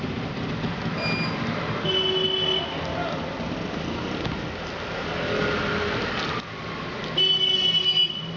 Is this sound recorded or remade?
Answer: recorded